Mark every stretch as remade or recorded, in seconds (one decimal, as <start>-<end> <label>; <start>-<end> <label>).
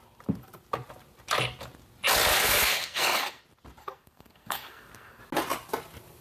0.0-2.3 recorded; 2.3-3.4 remade; 3.4-3.8 recorded; 3.8-5.2 remade; 5.2-6.2 recorded